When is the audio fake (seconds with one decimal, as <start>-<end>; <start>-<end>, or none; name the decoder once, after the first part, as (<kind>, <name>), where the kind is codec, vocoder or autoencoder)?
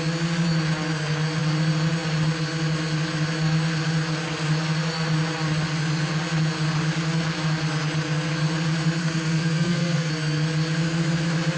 9.0-10.1 (codec, SNAC)